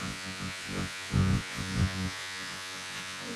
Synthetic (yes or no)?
yes